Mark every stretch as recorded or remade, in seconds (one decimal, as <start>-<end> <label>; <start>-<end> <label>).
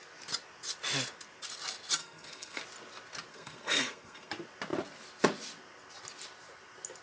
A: 0.0-2.0 recorded; 2.0-2.6 remade; 2.6-3.3 recorded; 3.3-4.3 remade; 4.3-7.0 recorded